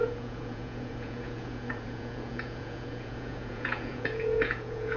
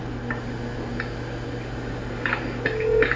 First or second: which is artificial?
first